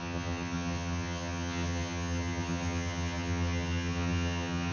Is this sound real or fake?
fake